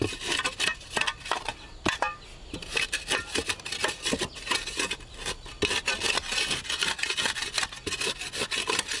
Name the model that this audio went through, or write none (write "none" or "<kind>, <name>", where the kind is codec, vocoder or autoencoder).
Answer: none